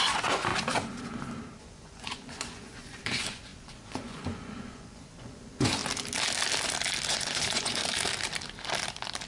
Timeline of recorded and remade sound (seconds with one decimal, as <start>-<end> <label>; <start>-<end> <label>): 0.0-0.5 remade; 0.5-1.6 recorded; 1.6-5.8 remade; 5.8-7.1 recorded; 7.1-7.8 remade; 7.8-9.3 recorded